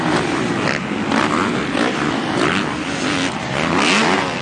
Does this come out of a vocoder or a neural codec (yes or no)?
no